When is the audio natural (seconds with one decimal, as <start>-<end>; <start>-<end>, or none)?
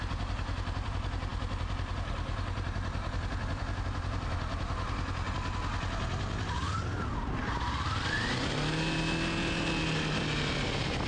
0.0-11.1